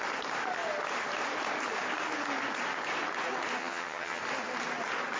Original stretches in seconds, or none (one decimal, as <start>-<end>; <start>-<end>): 0.0-3.6; 4.2-5.2